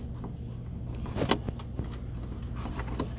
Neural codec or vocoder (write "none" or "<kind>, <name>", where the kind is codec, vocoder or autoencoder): none